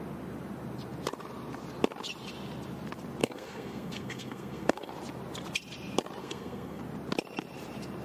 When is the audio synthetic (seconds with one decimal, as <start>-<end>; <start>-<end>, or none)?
3.2-4.9; 6.2-6.8